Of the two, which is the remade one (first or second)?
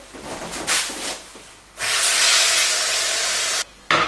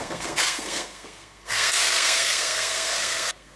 second